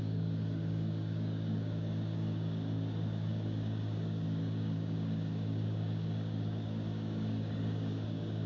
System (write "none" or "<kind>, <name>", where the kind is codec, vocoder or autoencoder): codec, DAC